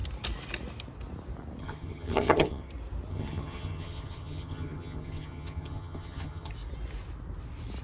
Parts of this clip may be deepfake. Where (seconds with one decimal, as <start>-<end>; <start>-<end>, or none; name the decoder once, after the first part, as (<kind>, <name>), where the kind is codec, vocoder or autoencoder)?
1.6-2.7 (vocoder, HiFi-GAN); 3.1-6.5